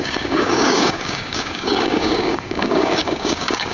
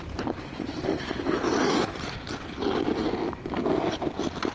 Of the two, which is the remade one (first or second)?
first